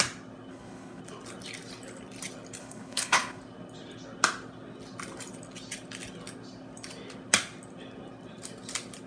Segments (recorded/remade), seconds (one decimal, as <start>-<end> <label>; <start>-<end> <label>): 0.0-0.5 recorded; 0.5-1.0 remade; 1.0-2.6 recorded; 2.6-3.4 remade; 3.4-9.1 recorded